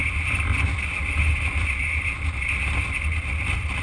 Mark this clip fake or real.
real